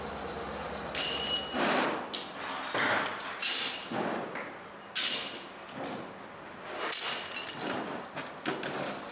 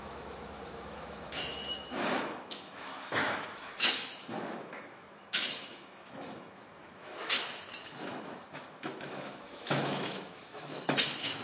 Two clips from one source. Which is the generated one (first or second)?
second